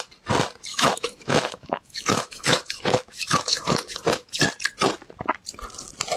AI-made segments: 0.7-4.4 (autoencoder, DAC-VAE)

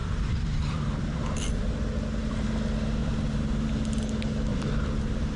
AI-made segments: 0.0-2.3 (vocoder, BigVGAN v2); 3.0-3.5; 4.5-5.4